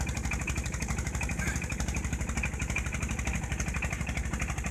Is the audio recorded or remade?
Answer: remade